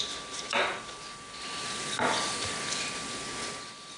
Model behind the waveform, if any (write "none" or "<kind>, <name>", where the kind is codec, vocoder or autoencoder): none